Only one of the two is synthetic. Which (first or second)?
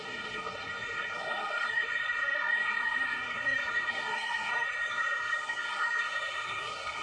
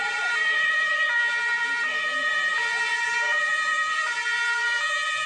first